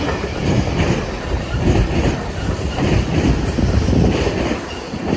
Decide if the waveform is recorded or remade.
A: remade